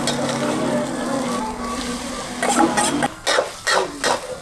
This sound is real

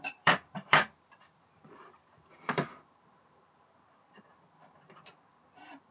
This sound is fake